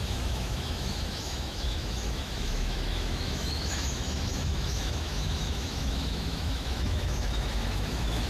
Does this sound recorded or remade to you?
remade